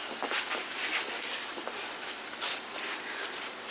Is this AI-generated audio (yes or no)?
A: no